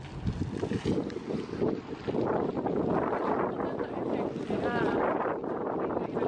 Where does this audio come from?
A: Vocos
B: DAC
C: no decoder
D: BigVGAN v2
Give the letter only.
C